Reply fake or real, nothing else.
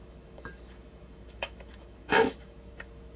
fake